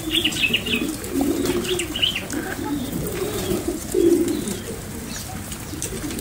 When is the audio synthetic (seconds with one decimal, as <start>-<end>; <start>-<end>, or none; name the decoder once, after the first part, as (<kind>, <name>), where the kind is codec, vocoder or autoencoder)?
none